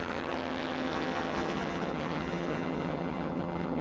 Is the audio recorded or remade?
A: remade